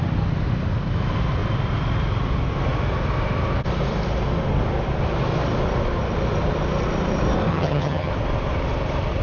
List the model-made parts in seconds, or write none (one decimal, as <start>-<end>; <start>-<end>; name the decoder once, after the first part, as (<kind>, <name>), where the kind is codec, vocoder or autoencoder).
7.5-8.1 (vocoder, HiFi-GAN)